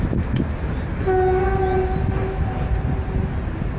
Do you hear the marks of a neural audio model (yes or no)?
no